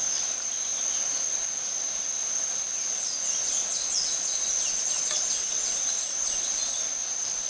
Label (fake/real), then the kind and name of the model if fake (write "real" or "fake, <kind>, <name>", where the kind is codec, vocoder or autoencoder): real